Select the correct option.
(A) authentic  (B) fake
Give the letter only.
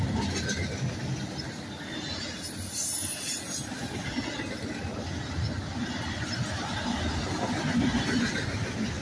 A